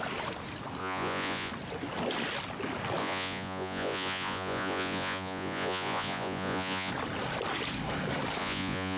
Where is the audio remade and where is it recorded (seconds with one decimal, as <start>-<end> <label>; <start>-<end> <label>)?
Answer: 0.0-0.8 recorded; 0.8-1.5 remade; 1.5-3.0 recorded; 3.0-6.9 remade; 6.9-8.4 recorded; 8.4-9.0 remade